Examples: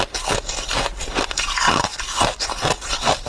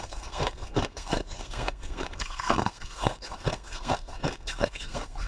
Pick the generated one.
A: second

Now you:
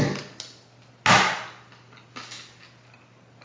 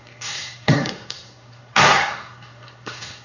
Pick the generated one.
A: second